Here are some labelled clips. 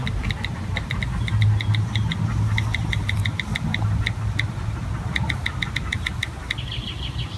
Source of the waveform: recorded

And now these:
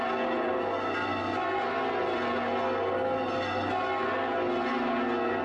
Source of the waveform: recorded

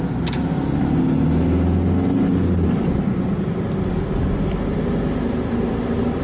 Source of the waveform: recorded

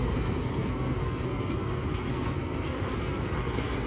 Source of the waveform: remade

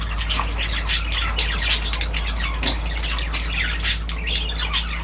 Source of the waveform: recorded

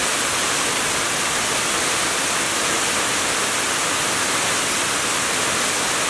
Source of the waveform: recorded